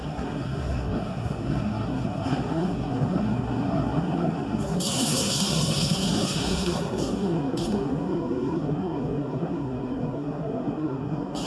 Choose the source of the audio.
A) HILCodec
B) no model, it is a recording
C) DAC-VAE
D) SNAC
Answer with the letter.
D